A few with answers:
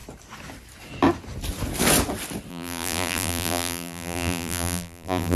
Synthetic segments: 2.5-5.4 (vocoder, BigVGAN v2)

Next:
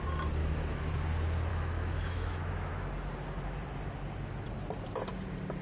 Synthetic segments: 0.4-0.9 (autoencoder, DAC-VAE); 1.5-2.7

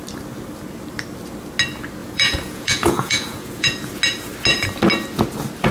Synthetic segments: 2.0-3.9 (vocoder, Vocos)

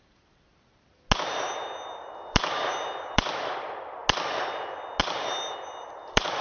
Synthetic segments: 0.0-0.5 (vocoder, BigVGAN v2); 2.0-4.0; 5.0-6.4